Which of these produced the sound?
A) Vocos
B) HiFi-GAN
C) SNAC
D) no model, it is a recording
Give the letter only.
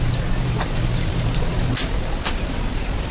D